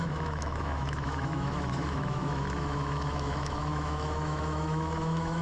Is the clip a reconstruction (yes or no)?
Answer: yes